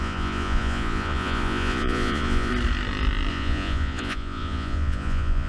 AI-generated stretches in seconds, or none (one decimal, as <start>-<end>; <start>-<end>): 0.0-2.5; 3.3-5.5